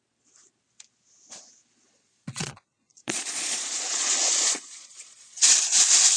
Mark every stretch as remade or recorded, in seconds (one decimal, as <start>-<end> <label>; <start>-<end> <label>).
0.0-1.8 recorded; 1.8-5.5 remade; 5.5-6.2 recorded